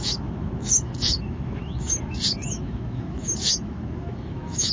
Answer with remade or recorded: remade